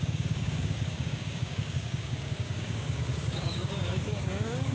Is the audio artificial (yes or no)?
yes